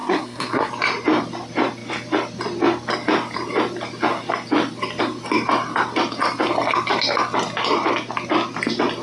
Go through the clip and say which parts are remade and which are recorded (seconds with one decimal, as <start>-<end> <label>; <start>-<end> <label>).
0.0-0.7 remade; 0.7-9.0 recorded